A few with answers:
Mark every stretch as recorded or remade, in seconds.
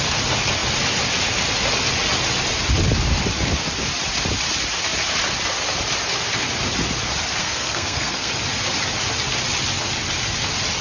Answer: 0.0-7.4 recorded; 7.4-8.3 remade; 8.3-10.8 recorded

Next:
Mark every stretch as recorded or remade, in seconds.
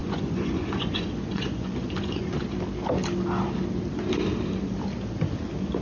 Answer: 0.0-2.4 remade; 2.4-5.8 recorded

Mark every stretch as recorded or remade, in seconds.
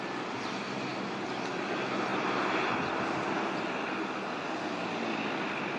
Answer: 0.0-5.8 recorded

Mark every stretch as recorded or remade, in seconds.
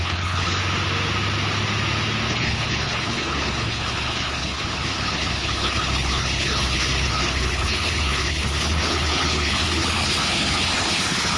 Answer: 0.0-0.6 remade; 0.6-2.3 recorded; 2.3-11.4 remade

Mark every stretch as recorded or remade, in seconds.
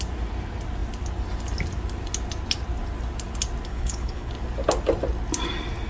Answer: 0.0-3.7 recorded; 3.7-4.3 remade; 4.3-5.9 recorded